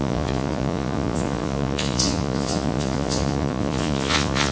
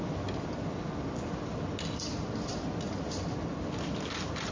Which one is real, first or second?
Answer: second